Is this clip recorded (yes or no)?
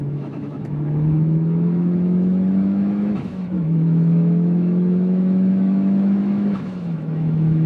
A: no